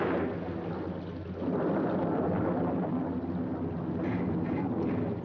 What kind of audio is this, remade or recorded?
recorded